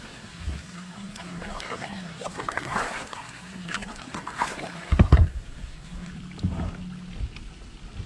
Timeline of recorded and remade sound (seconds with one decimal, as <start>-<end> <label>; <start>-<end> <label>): 0.0-6.1 remade; 6.1-8.1 recorded